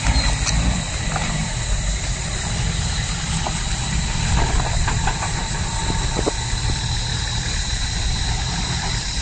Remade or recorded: recorded